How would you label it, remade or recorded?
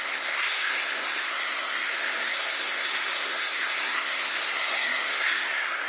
remade